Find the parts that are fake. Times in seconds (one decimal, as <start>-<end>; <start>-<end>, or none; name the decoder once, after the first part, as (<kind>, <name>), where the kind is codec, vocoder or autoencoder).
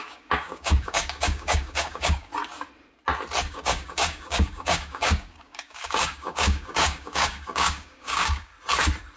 0.0-2.3 (codec, DAC); 3.5-8.5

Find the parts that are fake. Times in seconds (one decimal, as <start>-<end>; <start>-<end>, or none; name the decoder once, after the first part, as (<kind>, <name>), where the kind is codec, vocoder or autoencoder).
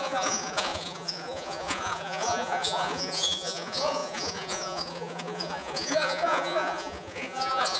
0.0-7.8 (vocoder, Vocos)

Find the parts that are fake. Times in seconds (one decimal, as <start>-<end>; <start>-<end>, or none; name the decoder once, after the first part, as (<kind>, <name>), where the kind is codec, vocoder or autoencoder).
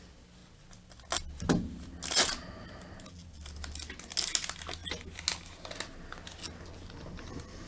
none